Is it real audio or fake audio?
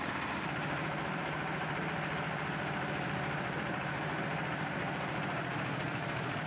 fake